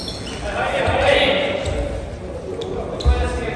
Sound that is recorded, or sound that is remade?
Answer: recorded